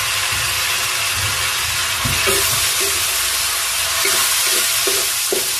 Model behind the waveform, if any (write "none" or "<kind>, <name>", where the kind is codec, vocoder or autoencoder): none